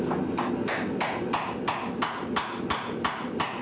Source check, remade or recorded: recorded